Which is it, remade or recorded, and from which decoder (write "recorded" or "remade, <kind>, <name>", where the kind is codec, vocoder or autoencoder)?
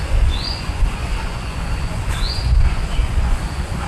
remade, vocoder, Vocos